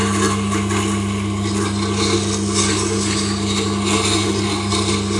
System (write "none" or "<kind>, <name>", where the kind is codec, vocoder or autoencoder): none